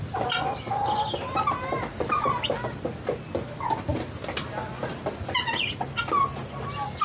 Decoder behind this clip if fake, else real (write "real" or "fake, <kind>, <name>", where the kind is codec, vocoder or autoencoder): real